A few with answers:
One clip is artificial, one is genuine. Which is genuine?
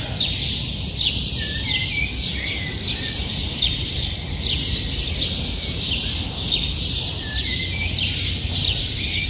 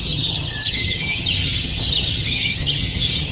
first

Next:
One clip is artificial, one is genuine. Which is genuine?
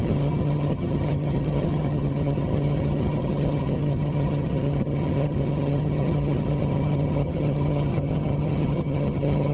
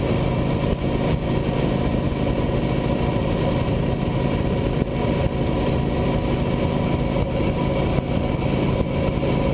second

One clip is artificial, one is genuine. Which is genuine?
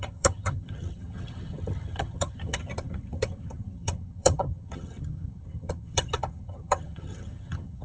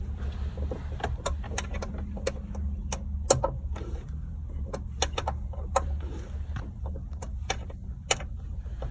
second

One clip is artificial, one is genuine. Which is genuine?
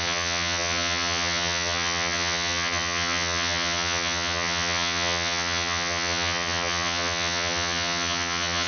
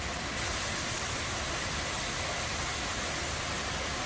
second